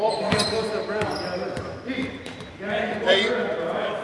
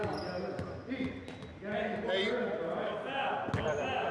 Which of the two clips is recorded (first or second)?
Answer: second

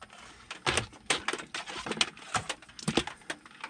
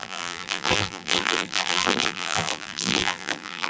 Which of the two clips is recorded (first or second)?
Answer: first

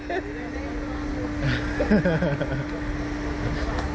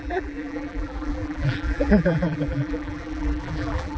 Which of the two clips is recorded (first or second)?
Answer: first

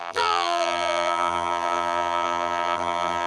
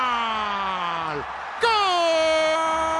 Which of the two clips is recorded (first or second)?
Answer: second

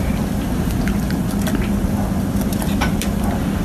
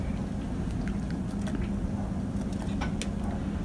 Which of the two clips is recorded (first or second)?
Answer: second